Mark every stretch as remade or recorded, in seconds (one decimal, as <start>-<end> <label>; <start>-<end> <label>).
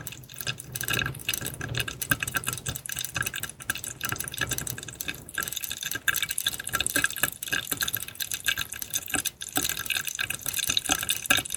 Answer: 0.0-11.6 recorded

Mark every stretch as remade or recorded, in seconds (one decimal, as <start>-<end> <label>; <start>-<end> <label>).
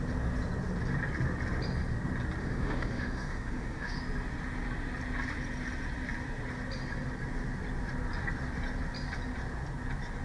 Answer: 0.0-2.4 recorded; 2.4-4.0 remade; 4.0-10.2 recorded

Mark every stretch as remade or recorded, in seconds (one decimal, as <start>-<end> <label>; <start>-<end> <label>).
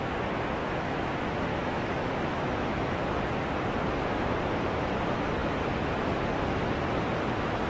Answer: 0.0-0.6 recorded; 0.6-1.1 remade; 1.1-1.5 recorded; 1.5-3.1 remade; 3.1-7.7 recorded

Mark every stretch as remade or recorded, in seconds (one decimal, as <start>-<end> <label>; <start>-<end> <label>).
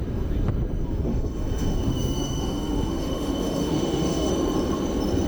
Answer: 0.0-1.1 recorded; 1.1-4.3 remade; 4.3-5.3 recorded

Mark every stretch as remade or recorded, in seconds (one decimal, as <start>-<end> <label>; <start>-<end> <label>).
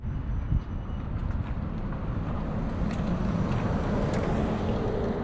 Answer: 0.0-5.2 recorded